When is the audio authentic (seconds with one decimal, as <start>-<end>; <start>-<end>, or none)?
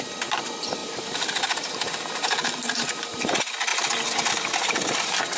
0.0-0.8; 3.2-5.4